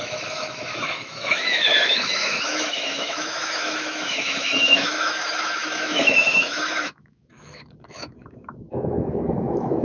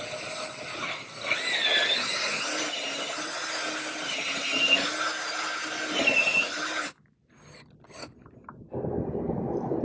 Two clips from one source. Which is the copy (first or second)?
first